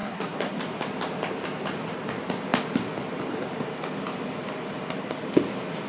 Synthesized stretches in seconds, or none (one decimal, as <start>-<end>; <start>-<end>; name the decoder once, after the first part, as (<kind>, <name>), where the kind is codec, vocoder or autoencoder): 0.0-0.6 (codec, SNAC)